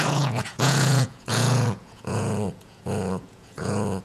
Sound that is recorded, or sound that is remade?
remade